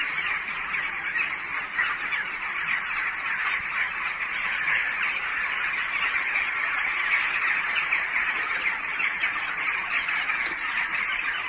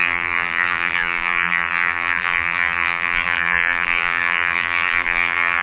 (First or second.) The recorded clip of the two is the first